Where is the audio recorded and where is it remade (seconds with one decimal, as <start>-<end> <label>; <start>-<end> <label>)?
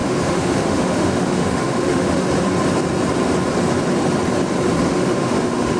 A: 0.0-2.2 remade; 2.2-4.8 recorded; 4.8-5.8 remade